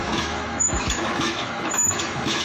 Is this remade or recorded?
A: remade